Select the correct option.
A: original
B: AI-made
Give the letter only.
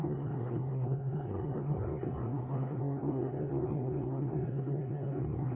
B